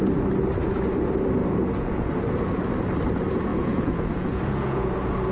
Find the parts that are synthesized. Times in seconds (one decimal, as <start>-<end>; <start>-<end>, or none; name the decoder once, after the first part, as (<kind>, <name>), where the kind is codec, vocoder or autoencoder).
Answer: 1.4-2.1 (vocoder, Vocos); 3.5-5.3